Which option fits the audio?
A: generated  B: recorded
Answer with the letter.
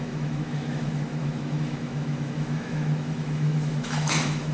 A